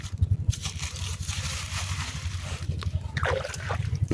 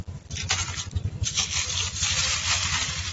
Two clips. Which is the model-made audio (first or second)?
first